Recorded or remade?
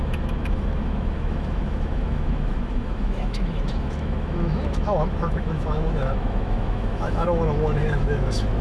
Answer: remade